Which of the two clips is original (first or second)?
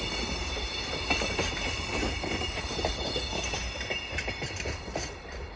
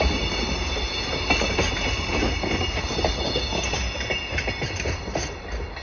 second